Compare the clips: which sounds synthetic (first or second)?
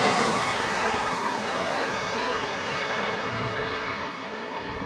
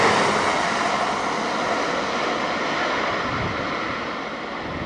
first